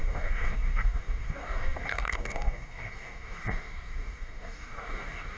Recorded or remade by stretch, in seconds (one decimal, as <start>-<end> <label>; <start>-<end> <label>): 0.0-5.4 remade